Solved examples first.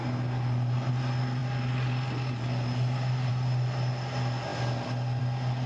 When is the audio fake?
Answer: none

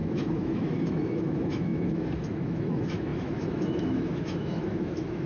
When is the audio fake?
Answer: 0.0-5.3 (autoencoder, DAC-VAE)

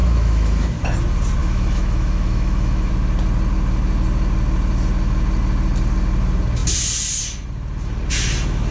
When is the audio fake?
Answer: 0.0-0.8 (autoencoder, DAC-VAE); 1.4-2.9

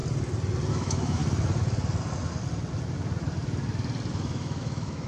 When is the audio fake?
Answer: 0.7-1.2 (autoencoder, DAC-VAE); 4.1-5.1

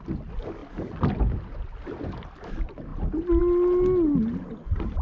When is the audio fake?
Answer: none

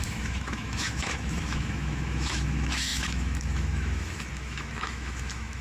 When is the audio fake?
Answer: 0.0-5.6 (autoencoder, DAC-VAE)